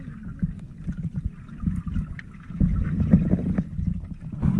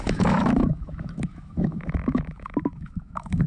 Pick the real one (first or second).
first